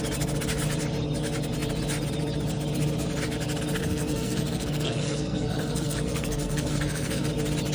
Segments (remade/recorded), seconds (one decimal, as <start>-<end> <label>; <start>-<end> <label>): 0.0-3.8 recorded; 3.8-7.3 remade; 7.3-7.7 recorded